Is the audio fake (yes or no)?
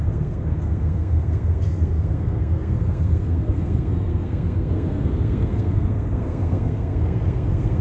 yes